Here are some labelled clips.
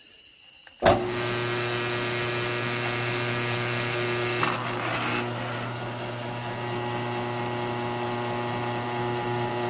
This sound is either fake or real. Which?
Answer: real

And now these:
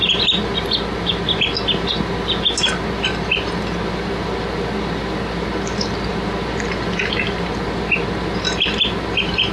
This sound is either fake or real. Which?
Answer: real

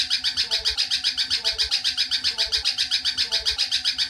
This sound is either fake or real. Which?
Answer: real